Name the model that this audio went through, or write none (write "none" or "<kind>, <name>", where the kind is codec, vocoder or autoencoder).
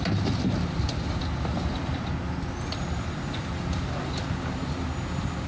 none